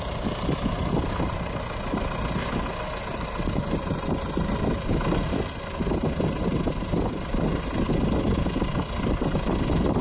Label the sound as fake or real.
real